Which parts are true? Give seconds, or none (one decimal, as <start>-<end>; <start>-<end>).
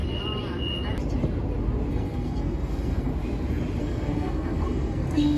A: 0.0-1.9; 3.1-3.8